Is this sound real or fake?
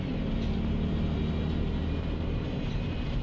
real